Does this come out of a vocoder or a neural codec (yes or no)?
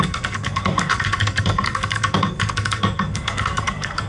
yes